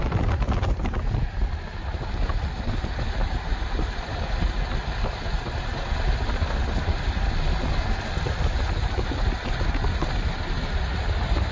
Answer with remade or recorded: recorded